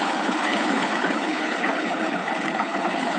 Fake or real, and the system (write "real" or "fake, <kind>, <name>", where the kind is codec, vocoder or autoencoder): fake, codec, HILCodec